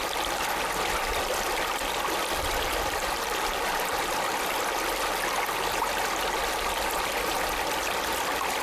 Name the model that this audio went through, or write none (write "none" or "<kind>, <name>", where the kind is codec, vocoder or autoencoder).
none